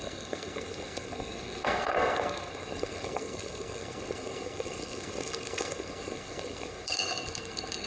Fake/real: fake